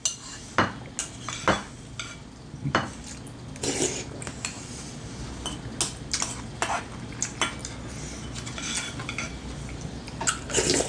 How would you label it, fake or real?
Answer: real